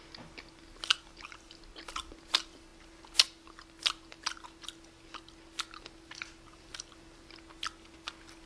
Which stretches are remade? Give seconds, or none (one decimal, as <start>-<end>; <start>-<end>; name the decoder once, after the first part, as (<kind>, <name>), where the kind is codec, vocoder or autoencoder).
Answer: none